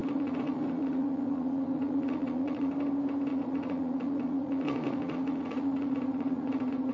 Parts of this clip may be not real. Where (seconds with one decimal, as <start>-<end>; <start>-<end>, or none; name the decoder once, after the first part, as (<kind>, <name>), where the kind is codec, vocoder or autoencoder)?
0.0-2.7 (vocoder, Vocos); 3.3-6.9